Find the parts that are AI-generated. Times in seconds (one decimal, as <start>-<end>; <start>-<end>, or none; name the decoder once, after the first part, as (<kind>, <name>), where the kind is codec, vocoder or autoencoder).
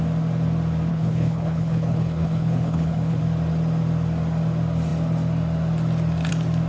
0.9-3.2 (codec, HILCodec)